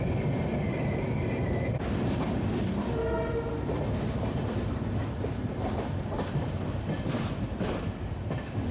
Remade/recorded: recorded